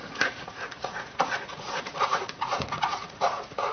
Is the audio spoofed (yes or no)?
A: yes